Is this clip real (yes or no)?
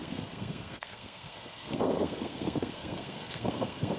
no